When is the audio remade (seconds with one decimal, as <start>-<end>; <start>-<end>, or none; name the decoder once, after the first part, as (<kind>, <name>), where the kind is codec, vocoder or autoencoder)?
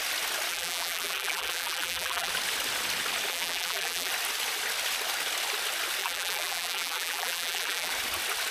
0.5-2.3 (vocoder, BigVGAN v2); 3.3-4.1; 6.0-7.9